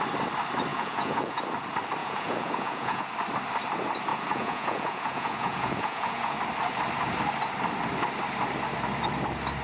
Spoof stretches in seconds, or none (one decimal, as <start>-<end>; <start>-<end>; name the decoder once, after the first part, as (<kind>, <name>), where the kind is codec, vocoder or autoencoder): 0.7-1.4 (vocoder, Vocos); 2.0-3.0; 4.1-6.4